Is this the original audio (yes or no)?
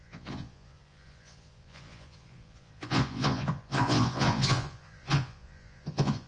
no